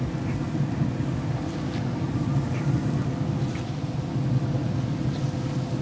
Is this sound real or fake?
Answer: real